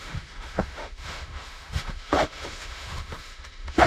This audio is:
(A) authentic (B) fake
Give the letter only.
B